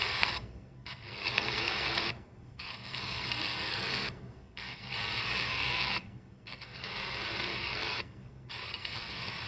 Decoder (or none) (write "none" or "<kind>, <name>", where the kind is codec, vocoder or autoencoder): codec, SNAC